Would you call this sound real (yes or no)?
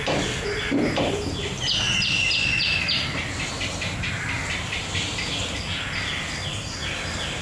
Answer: yes